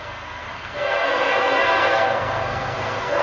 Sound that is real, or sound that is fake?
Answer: fake